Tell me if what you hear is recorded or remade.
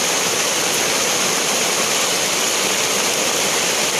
recorded